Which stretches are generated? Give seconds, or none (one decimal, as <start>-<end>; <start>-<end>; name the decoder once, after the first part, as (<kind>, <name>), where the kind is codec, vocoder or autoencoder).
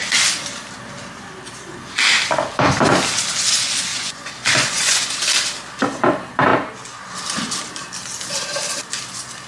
3.9-5.1 (vocoder, Vocos)